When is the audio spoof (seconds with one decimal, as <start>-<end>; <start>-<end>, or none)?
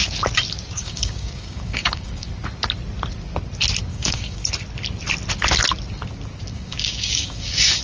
0.8-2.3; 3.9-4.5; 6.5-7.8